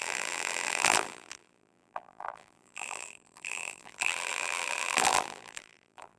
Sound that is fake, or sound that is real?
fake